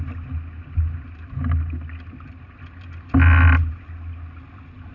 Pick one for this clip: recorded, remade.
recorded